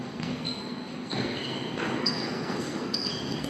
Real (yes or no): no